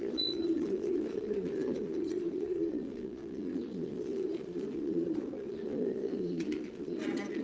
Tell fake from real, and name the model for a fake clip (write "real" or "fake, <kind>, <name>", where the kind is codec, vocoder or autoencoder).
fake, vocoder, Vocos